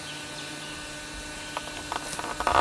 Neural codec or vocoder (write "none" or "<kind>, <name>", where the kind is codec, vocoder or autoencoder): none